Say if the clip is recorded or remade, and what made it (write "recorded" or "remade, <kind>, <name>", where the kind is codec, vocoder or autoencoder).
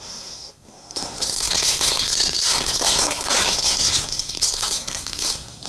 remade, codec, SNAC